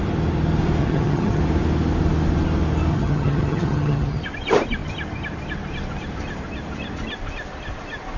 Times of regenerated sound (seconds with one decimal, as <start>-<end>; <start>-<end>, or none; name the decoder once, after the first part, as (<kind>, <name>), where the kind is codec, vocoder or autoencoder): 0.8-1.4 (vocoder, HiFi-GAN); 2.9-4.2